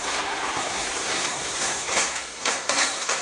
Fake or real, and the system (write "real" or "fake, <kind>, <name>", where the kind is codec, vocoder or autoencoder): fake, codec, SNAC